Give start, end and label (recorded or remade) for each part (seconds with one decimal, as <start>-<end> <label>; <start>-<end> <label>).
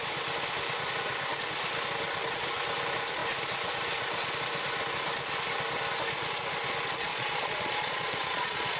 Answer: 0.0-7.1 recorded; 7.1-8.8 remade